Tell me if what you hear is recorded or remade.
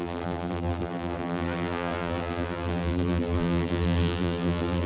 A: remade